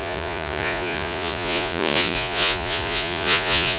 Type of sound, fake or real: fake